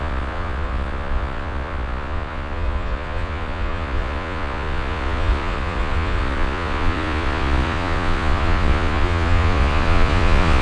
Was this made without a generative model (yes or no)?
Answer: no